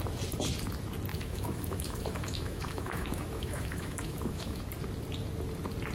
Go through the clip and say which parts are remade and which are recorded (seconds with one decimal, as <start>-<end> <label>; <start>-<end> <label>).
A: 0.0-1.1 recorded; 1.1-4.6 remade; 4.6-5.9 recorded